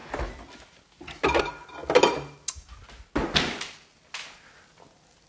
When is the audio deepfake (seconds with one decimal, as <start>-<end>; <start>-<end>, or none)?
none